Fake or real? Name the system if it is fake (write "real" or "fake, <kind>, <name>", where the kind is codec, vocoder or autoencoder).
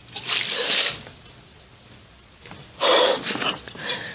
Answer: real